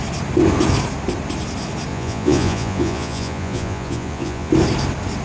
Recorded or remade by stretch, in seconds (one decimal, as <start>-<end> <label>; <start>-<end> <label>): 0.0-1.9 recorded; 1.9-4.5 remade; 4.5-5.2 recorded